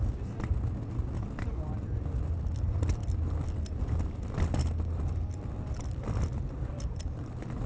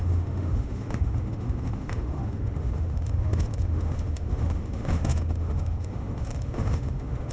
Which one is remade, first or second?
second